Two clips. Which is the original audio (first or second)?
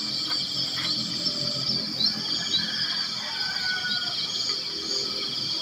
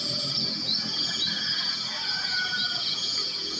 first